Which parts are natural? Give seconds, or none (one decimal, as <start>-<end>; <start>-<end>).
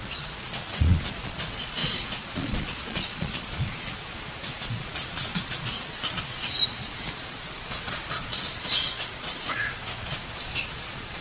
none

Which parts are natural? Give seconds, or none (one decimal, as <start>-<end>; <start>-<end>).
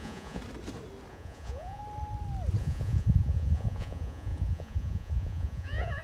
0.4-1.1; 1.8-2.6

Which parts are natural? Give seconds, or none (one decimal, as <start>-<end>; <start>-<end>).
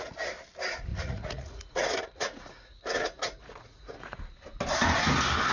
0.0-0.9; 4.2-5.5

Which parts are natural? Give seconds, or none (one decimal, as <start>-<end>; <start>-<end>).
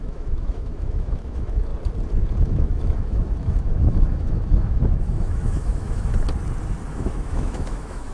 1.7-2.4; 6.1-6.9